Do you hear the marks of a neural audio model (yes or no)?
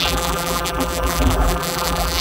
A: yes